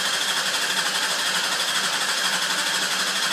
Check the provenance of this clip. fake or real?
real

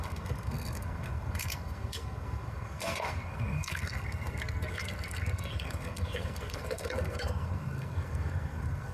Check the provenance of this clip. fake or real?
fake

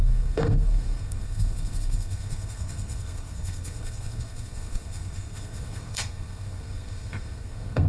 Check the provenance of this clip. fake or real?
fake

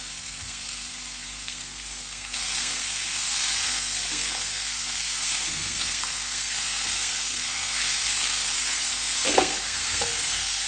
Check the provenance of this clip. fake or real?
fake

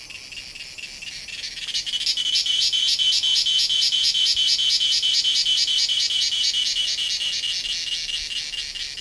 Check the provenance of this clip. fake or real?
real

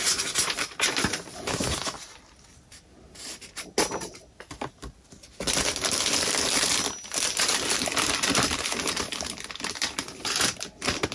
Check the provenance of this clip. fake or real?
real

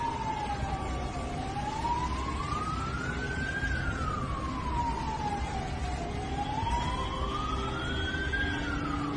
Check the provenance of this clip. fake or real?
real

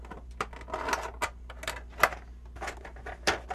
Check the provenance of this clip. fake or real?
real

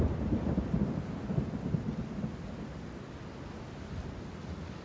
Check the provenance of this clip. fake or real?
real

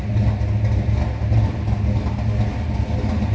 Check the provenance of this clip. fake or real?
real